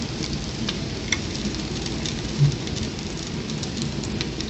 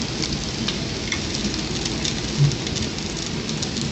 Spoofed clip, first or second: first